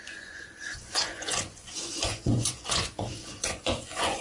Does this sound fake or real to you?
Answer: fake